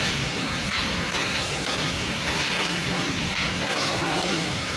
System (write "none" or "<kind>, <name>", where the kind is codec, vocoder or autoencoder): codec, SNAC